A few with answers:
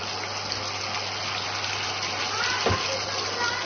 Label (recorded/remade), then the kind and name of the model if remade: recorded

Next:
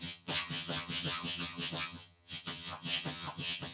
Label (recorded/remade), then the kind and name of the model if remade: remade, vocoder, HiFi-GAN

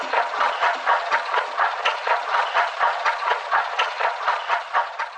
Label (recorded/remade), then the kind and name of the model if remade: remade, vocoder, Vocos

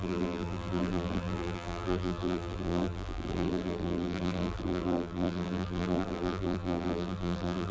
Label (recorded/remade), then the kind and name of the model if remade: remade, vocoder, BigVGAN v2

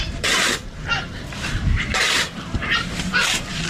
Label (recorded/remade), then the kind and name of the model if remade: remade, vocoder, BigVGAN v2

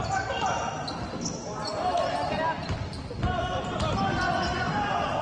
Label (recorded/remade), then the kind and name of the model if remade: recorded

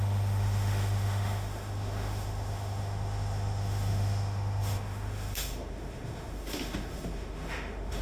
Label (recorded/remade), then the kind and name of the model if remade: remade, autoencoder, DAC-VAE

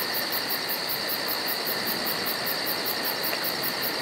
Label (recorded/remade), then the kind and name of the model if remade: recorded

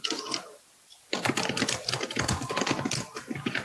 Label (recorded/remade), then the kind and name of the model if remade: recorded